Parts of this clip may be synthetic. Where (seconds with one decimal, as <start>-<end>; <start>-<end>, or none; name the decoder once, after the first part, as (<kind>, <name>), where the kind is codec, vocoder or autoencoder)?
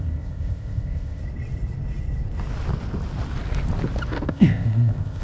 0.0-1.2 (codec, ZipCodec); 4.3-5.2